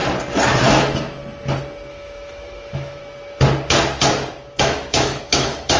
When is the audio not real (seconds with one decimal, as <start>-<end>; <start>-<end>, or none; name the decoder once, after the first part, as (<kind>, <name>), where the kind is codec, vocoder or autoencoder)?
0.7-1.2 (autoencoder, DAC-VAE); 1.9-3.0; 4.6-5.8